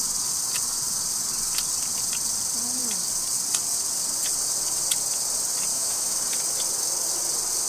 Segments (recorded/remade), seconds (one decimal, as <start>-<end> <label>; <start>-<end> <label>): 0.0-5.7 recorded; 5.7-6.2 remade; 6.2-7.7 recorded